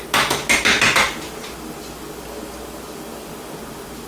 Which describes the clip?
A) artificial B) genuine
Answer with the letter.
B